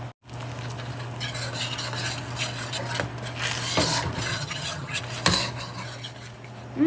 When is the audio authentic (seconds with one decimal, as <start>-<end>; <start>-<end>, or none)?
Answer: 0.0-4.3; 5.0-6.9